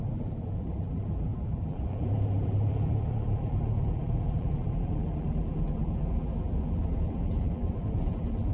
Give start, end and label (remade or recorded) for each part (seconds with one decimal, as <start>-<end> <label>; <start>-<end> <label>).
0.0-8.5 remade